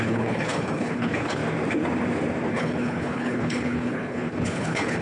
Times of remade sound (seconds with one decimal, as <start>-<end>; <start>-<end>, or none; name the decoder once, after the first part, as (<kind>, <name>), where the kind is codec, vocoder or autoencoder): 0.0-1.4 (codec, HILCodec); 2.5-5.0